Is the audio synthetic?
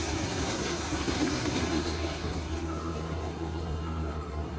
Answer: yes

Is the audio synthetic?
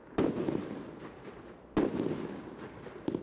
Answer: no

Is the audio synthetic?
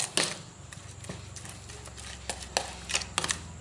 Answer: no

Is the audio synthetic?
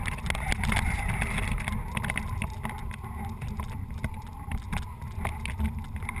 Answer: no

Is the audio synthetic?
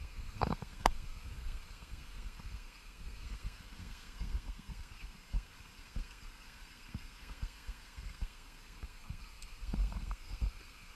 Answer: yes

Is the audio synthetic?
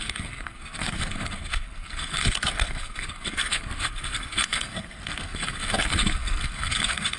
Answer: yes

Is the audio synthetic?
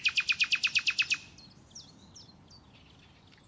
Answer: no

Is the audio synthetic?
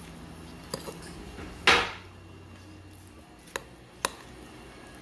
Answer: no